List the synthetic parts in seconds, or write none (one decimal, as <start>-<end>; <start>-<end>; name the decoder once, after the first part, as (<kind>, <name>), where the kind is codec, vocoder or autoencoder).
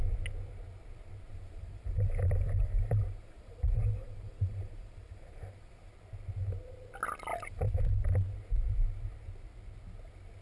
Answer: 1.3-5.9 (vocoder, BigVGAN v2); 7.3-7.8